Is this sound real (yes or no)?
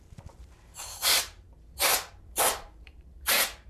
no